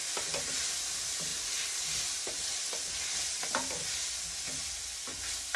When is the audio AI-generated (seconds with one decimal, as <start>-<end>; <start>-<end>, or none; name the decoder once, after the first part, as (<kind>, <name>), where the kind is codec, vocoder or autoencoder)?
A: none